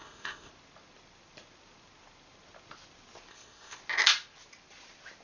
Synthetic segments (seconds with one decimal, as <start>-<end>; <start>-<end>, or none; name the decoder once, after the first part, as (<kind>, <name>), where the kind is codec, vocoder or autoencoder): 0.0-0.5 (codec, ZipCodec); 3.3-3.8